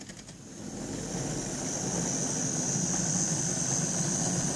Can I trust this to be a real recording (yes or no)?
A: yes